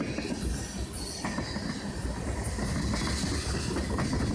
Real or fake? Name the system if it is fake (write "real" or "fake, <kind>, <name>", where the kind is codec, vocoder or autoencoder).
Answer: real